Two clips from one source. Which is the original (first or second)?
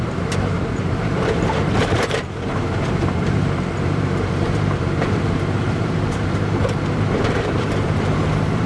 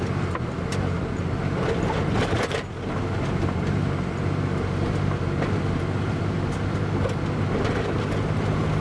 second